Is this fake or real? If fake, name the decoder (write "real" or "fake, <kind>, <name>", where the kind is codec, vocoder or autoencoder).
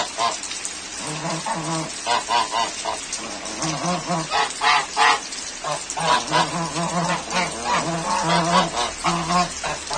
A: real